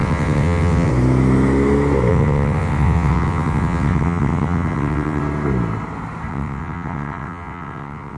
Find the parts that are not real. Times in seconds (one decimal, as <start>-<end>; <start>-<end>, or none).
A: 0.0-0.9; 2.1-5.2; 6.3-8.2